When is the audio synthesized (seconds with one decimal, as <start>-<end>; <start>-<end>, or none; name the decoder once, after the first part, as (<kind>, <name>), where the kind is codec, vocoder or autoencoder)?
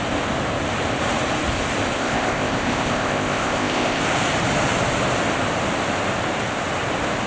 2.0-4.0 (codec, ZipCodec)